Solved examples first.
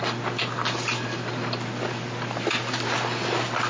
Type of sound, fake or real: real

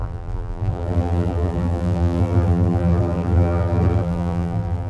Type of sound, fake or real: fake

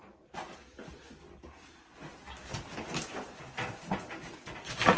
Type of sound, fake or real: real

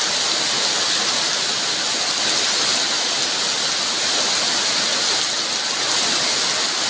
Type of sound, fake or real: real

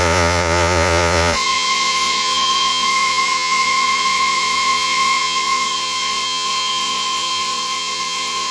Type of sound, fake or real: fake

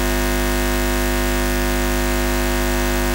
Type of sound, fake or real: real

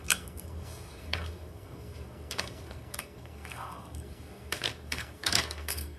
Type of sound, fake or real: fake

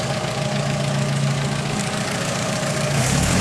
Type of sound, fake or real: fake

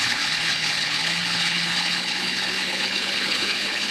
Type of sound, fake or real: fake